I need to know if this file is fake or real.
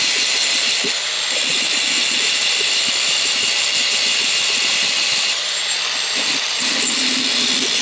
fake